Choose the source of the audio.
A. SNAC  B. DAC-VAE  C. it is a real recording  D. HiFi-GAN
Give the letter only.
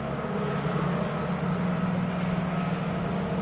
C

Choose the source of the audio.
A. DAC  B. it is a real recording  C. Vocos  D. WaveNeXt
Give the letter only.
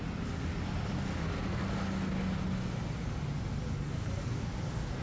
B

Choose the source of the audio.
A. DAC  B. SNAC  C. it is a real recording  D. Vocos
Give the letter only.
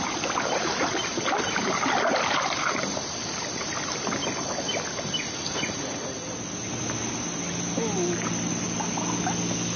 C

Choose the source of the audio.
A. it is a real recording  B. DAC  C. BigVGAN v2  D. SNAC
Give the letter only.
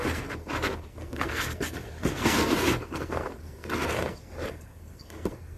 D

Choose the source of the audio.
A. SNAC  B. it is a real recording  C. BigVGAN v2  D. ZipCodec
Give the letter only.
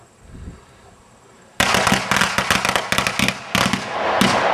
B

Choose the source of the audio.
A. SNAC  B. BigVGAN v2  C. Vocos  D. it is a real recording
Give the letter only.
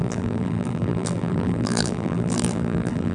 B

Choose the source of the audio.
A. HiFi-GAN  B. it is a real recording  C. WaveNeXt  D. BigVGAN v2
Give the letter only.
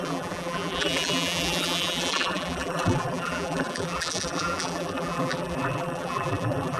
D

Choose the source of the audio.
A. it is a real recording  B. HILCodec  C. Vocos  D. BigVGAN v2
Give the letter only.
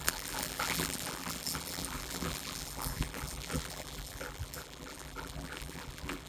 D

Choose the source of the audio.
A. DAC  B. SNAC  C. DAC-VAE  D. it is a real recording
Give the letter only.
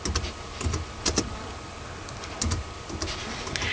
D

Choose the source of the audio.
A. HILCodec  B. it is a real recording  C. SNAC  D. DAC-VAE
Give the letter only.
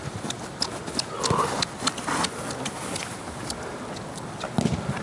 B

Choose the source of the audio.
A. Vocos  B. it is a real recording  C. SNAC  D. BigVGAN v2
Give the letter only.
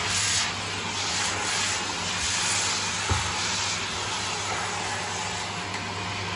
B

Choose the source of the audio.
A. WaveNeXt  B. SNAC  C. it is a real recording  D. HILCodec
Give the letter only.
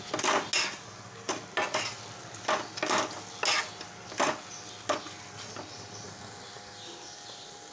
C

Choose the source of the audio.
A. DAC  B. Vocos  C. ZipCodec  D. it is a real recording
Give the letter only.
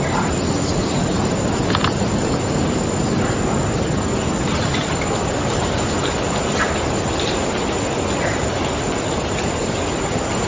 D